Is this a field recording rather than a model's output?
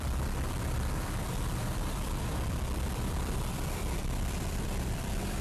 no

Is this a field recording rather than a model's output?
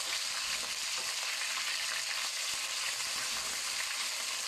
yes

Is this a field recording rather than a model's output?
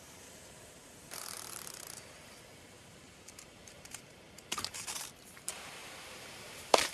no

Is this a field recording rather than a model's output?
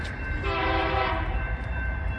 no